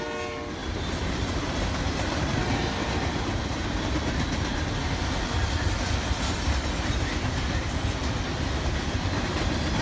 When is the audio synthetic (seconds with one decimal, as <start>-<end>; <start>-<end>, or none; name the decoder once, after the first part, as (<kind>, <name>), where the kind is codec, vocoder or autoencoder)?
none